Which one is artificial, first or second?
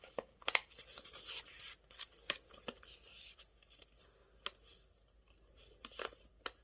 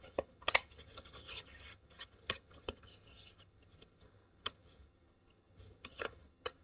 second